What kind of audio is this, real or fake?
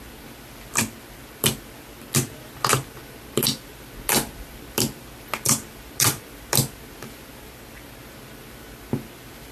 real